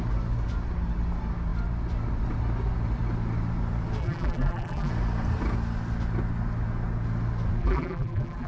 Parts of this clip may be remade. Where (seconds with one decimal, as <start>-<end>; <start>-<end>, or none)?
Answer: 4.0-4.9; 7.6-8.5